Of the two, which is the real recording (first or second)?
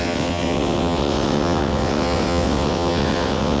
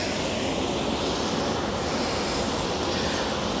second